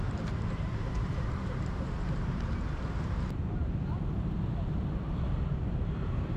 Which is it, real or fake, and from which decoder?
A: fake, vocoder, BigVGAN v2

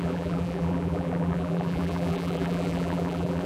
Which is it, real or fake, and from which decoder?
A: fake, vocoder, BigVGAN v2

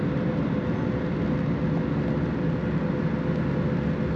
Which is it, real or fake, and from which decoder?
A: real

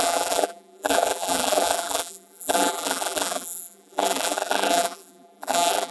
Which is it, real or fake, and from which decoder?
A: fake, vocoder, BigVGAN v2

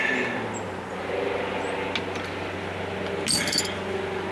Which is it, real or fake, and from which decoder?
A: real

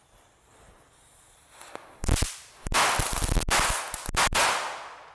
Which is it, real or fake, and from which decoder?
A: real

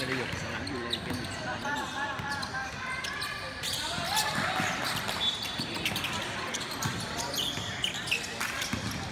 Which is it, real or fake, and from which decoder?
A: real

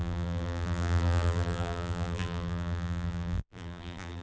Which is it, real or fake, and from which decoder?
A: fake, vocoder, BigVGAN v2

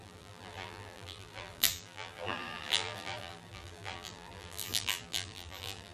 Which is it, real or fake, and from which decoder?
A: fake, vocoder, BigVGAN v2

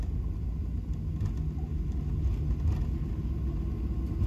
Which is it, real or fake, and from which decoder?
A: real